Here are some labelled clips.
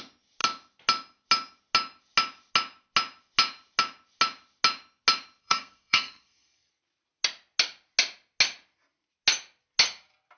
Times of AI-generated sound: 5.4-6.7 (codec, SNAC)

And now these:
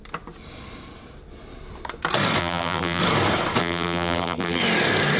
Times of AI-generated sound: 2.4-3.0 (vocoder, BigVGAN v2); 3.6-4.6